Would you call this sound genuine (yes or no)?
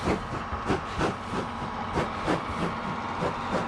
yes